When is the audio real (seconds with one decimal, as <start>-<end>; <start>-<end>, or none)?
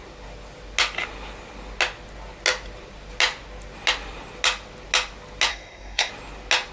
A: 0.0-5.5; 6.1-6.7